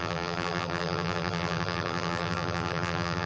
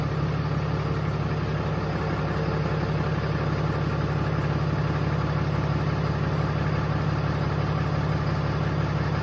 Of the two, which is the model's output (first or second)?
first